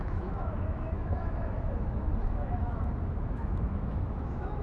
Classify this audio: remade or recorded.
remade